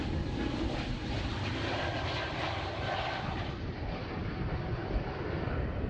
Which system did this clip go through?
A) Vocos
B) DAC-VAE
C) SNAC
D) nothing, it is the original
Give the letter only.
D